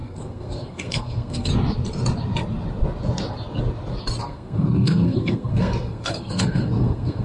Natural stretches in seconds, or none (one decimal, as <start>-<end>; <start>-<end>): 1.5-4.2

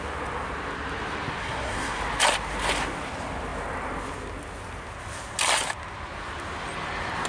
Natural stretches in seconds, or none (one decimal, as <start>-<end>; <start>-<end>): 0.0-1.4; 2.0-7.3

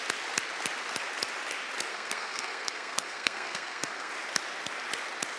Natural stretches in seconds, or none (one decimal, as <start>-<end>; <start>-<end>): 0.0-1.9; 4.1-5.4

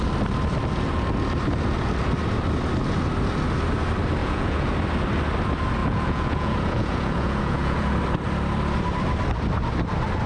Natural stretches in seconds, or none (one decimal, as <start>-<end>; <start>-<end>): 0.0-4.2; 4.7-5.8; 7.9-10.3

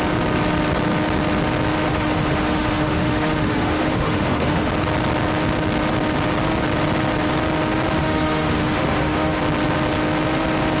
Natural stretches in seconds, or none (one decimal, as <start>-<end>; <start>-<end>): 0.0-1.9; 4.7-8.0; 9.4-10.8

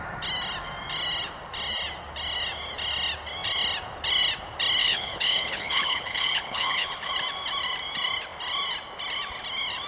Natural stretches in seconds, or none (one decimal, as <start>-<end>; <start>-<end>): 0.0-4.8; 7.1-9.9

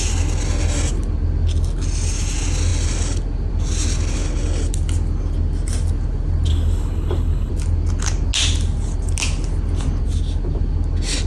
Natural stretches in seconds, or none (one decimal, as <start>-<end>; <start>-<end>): 0.0-6.5; 7.5-11.3

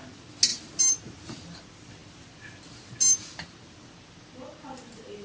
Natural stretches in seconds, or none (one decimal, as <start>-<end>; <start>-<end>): 0.0-0.5; 1.6-5.2